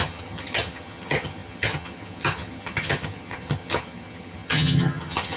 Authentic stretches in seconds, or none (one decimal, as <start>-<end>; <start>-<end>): none